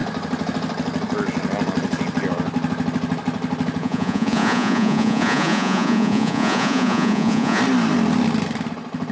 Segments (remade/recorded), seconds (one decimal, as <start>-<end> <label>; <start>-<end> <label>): 0.0-3.8 recorded; 3.8-7.6 remade; 7.6-9.1 recorded